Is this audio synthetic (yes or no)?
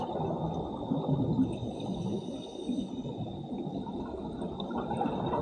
no